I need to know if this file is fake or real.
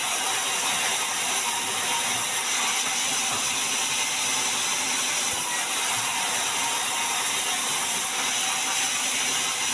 real